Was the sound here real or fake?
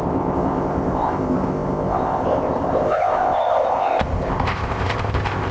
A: fake